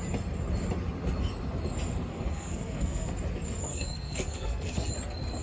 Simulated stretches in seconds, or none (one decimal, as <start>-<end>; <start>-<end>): 2.1-3.1; 3.7-4.9